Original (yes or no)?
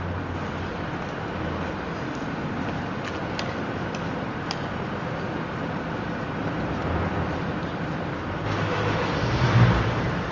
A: yes